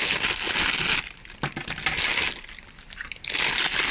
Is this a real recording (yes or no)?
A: yes